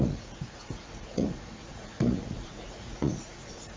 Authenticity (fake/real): fake